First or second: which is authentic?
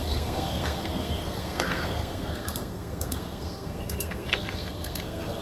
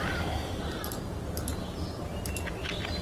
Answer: second